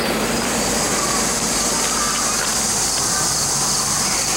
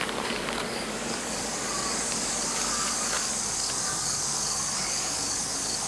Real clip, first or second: first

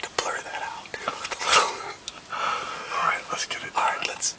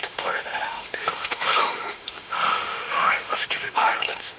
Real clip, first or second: first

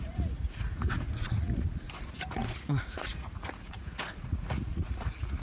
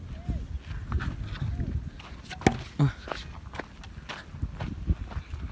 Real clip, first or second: second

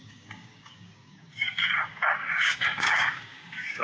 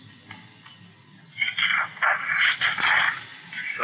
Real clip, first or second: second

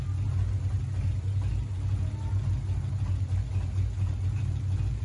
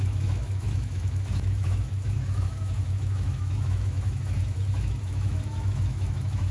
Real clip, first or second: first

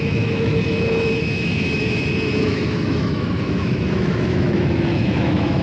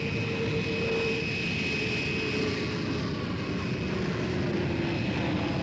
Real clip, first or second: second